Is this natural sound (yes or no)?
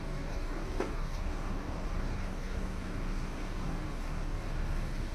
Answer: no